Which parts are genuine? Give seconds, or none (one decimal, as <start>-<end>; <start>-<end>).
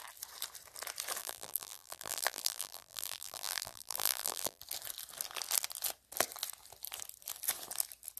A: 0.0-1.2; 4.6-8.2